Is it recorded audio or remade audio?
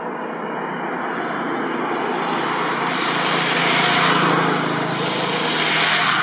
recorded